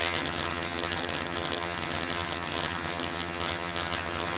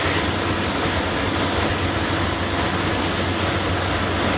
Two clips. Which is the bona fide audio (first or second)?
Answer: second